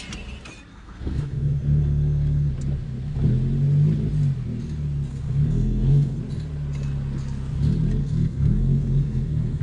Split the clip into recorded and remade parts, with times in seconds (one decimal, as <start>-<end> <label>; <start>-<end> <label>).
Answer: 0.0-0.7 recorded; 0.7-2.5 remade; 2.5-5.1 recorded; 5.1-6.2 remade; 6.2-8.0 recorded; 8.0-9.6 remade